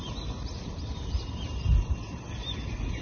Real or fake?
real